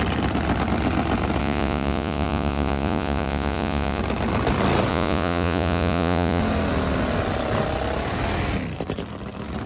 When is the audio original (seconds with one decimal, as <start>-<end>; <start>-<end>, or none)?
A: 0.0-1.4; 4.0-4.9; 6.4-9.7